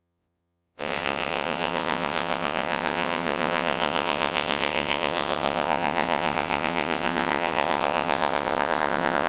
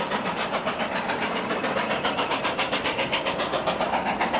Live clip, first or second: second